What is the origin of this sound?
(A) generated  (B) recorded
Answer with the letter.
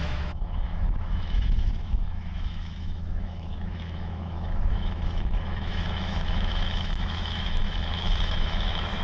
A